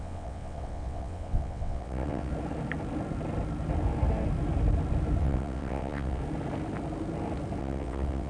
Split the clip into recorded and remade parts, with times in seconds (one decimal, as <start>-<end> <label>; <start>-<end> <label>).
0.0-2.3 remade; 2.3-5.2 recorded; 5.2-6.2 remade; 6.2-7.6 recorded; 7.6-8.3 remade